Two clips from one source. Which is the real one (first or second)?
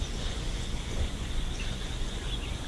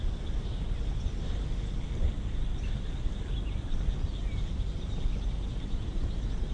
second